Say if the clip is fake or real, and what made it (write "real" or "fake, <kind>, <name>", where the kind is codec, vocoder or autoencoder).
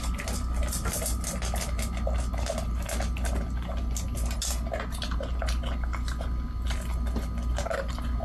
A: real